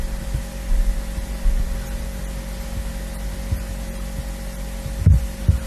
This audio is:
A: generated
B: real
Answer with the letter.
B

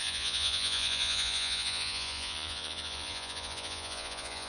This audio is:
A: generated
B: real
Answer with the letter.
A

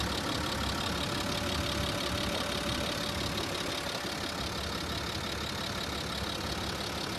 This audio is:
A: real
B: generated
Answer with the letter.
A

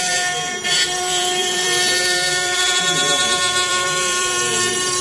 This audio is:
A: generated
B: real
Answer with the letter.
A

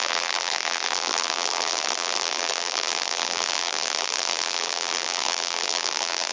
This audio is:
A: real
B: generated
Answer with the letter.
B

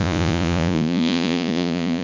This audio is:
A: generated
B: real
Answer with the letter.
A